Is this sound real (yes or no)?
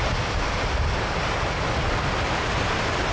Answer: yes